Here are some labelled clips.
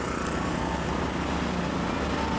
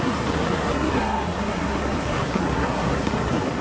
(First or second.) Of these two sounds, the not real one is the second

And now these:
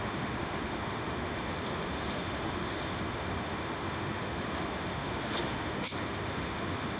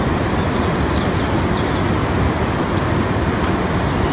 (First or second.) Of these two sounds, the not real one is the first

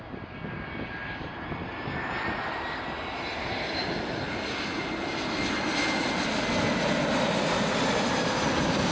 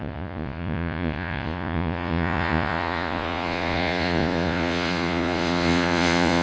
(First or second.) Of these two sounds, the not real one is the second